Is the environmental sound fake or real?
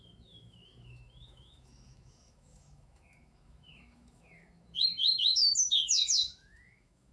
fake